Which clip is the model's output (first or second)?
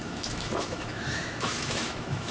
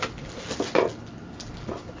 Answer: first